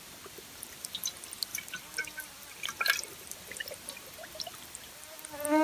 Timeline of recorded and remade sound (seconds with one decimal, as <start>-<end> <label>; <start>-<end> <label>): 0.0-5.6 recorded